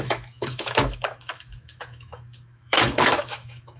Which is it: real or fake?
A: fake